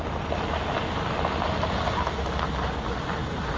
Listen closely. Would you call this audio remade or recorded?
recorded